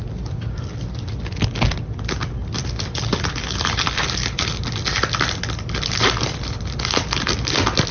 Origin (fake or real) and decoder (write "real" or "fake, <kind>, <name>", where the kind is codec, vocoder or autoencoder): real